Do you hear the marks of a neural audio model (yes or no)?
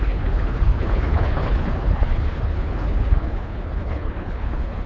yes